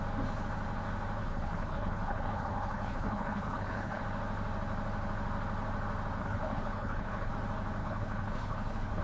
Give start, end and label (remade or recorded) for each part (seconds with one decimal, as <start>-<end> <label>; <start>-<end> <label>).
0.0-1.2 recorded; 1.2-4.0 remade; 4.0-6.2 recorded; 6.2-7.3 remade; 7.3-7.8 recorded; 7.8-9.0 remade